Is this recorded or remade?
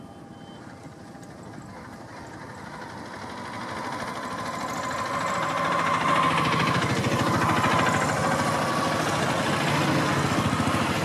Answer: recorded